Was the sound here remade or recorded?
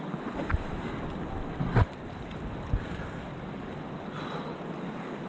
recorded